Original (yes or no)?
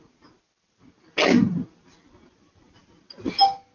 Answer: yes